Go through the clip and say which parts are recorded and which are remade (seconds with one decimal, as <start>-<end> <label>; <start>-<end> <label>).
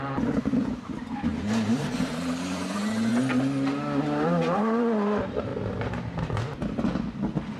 0.0-3.1 remade; 3.1-4.0 recorded; 4.0-5.5 remade; 5.5-7.6 recorded